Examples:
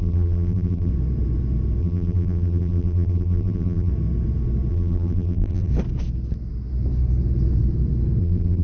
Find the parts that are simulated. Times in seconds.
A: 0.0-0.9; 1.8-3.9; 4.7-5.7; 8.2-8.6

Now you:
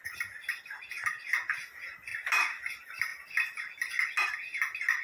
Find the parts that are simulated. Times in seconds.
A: none

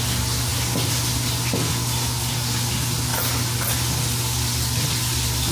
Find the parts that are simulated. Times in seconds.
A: none

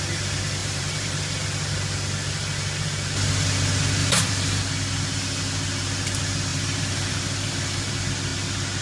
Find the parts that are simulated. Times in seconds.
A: 0.6-1.2; 4.0-4.6; 6.5-7.9

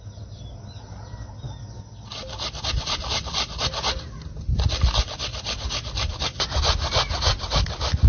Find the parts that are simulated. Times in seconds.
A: none